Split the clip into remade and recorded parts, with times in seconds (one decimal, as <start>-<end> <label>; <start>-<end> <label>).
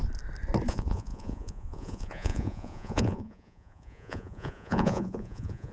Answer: 0.0-0.7 recorded; 0.7-5.7 remade